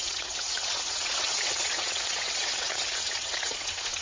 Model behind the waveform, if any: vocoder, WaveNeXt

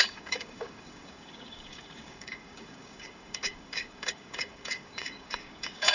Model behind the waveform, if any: codec, DAC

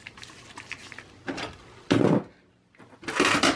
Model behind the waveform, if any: none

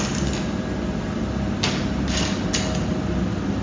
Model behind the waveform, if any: none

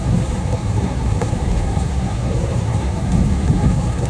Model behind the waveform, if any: codec, SNAC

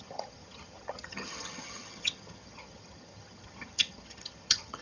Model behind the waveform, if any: vocoder, HiFi-GAN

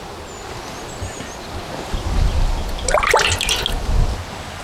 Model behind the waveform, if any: none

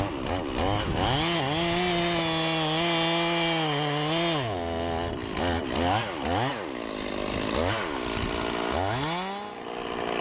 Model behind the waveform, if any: none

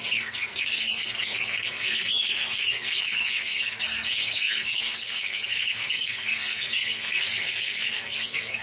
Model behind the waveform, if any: codec, SNAC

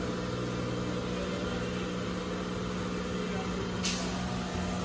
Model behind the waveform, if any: none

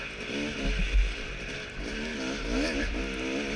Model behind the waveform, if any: none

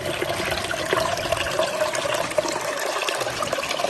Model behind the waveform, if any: none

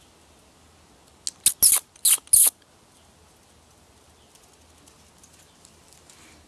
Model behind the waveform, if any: none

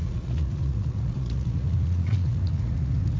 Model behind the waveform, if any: vocoder, Vocos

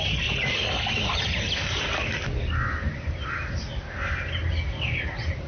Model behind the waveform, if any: none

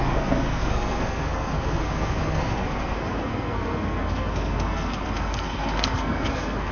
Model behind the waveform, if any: codec, SNAC